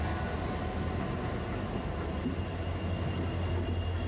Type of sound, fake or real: real